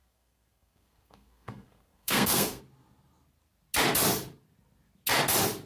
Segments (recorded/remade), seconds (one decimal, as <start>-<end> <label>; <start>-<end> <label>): 0.0-2.6 remade; 2.6-5.7 recorded